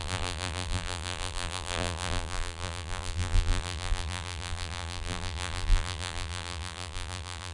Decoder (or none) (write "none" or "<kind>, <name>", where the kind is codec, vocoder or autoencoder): vocoder, BigVGAN v2